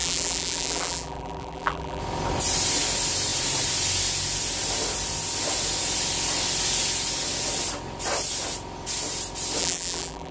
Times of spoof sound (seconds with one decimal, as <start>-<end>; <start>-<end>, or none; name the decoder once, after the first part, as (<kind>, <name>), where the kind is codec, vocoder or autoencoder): 0.0-2.0 (vocoder, BigVGAN v2); 9.6-10.3